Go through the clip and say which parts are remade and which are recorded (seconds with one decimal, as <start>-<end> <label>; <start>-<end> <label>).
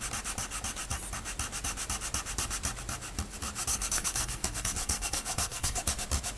0.0-3.7 recorded; 3.7-5.8 remade; 5.8-6.4 recorded